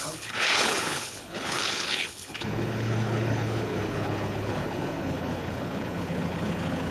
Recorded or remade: remade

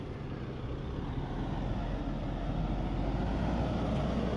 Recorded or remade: recorded